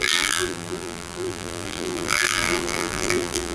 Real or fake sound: fake